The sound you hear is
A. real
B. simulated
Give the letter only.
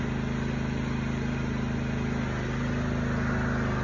A